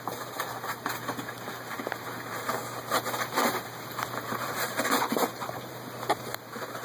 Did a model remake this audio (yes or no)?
yes